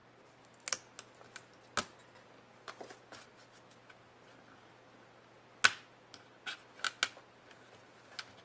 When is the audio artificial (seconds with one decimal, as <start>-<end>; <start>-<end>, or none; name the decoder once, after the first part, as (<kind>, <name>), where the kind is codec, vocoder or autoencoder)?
none